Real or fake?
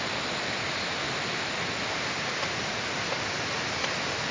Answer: real